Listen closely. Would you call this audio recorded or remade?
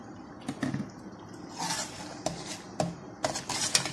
recorded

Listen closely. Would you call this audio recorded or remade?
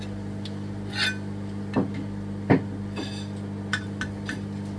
recorded